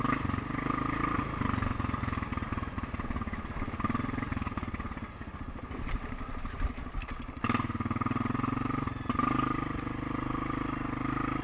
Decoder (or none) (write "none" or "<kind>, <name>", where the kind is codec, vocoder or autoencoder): none